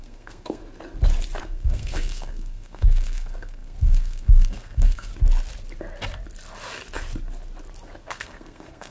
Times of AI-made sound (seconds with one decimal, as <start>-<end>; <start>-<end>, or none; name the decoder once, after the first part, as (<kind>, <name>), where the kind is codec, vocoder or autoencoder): 0.0-0.6 (codec, SNAC); 1.4-5.1; 8.1-8.9